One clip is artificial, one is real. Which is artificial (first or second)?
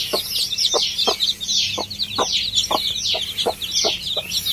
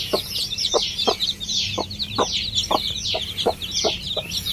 second